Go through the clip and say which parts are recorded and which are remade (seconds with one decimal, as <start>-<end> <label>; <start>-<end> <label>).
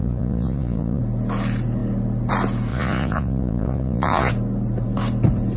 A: 0.0-1.0 remade; 1.0-2.7 recorded; 2.7-4.3 remade; 4.3-5.6 recorded